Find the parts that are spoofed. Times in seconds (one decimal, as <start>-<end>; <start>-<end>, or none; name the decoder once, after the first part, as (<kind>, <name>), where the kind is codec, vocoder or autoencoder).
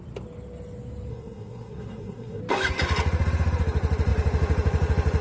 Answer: 1.1-2.4 (codec, SNAC)